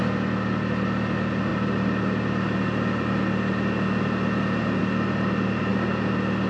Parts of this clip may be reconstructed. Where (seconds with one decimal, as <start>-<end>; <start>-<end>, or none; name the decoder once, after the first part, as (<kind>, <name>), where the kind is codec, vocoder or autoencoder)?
none